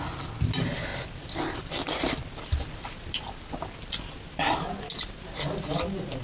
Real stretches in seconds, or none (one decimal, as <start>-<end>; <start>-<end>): 0.0-6.2